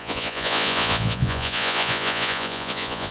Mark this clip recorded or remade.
remade